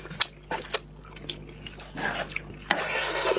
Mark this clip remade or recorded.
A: recorded